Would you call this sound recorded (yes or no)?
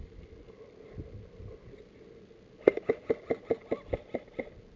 yes